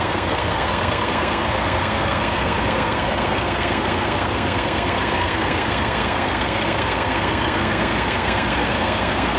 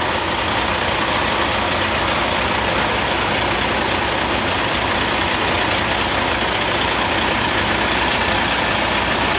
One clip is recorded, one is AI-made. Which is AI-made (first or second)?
first